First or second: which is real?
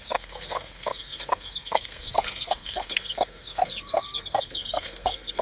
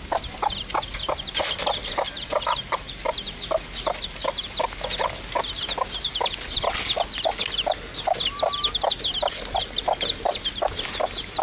second